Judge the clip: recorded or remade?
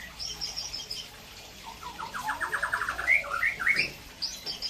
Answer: recorded